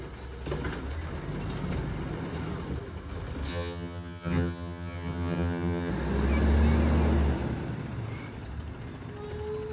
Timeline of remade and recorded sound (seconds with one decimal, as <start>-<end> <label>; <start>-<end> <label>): 0.0-3.5 recorded; 3.5-5.9 remade; 5.9-9.7 recorded